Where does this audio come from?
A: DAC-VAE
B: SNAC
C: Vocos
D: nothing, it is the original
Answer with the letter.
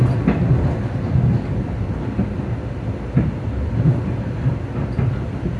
D